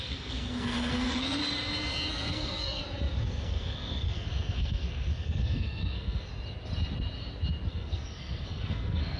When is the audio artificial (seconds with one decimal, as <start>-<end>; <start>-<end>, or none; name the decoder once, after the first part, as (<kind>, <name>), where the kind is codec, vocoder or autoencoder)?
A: 0.0-1.4 (codec, SNAC); 2.1-2.8; 3.3-6.3; 7.7-9.2

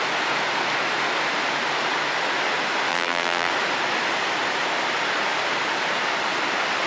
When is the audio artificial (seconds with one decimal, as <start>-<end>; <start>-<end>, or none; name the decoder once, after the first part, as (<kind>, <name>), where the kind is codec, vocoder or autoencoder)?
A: 2.9-3.5 (vocoder, BigVGAN v2)

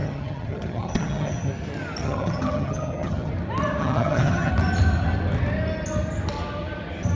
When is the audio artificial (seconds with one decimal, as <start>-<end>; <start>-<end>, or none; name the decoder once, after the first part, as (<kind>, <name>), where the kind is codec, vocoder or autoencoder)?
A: 0.0-1.5 (vocoder, HiFi-GAN); 2.0-3.3; 3.8-4.5

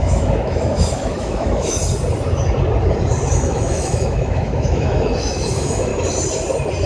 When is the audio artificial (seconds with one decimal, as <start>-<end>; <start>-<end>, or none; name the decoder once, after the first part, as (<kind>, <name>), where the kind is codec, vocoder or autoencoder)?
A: 0.0-1.8 (autoencoder, DAC-VAE); 3.3-5.9

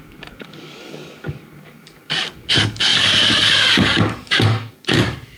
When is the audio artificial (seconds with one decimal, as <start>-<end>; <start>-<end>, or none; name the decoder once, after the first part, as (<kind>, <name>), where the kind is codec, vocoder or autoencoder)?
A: 0.0-5.4 (codec, DAC)

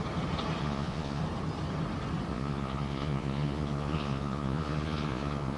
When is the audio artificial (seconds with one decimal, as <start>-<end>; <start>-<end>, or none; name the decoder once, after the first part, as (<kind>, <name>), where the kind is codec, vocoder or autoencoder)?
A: 0.6-1.2 (vocoder, Vocos); 2.3-5.6

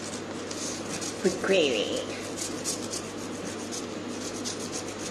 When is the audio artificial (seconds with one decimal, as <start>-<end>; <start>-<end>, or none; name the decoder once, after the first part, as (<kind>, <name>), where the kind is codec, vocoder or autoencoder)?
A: none